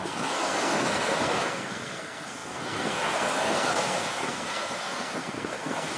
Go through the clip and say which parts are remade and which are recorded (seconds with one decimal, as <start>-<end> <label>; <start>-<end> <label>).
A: 0.0-6.0 remade